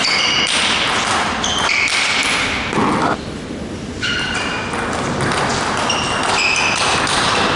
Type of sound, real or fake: real